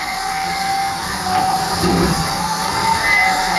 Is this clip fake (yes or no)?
yes